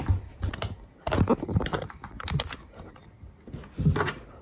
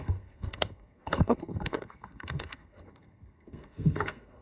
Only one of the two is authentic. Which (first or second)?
first